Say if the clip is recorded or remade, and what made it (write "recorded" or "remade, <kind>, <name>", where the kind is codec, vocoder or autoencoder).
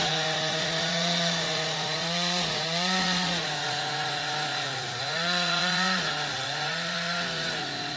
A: remade, vocoder, Vocos